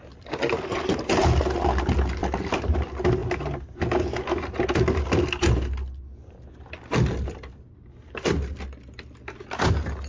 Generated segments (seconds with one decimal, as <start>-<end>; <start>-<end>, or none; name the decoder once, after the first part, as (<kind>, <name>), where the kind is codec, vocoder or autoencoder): 2.2-2.7 (vocoder, BigVGAN v2)